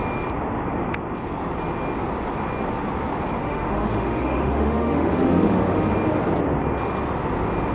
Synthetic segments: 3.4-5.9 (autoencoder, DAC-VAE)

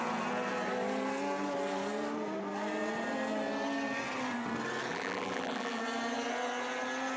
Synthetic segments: 4.9-5.8 (vocoder, BigVGAN v2)

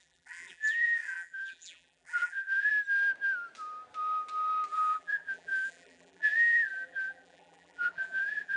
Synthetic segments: 0.0-2.7 (vocoder, BigVGAN v2); 4.7-8.6

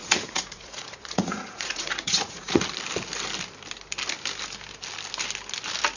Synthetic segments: 0.0-2.6 (vocoder, Vocos)

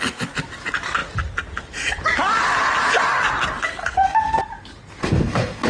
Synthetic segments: 3.8-4.4 (codec, SNAC); 5.0-5.7